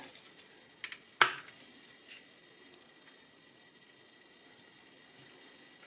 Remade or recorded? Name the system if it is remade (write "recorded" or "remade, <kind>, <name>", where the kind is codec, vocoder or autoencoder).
recorded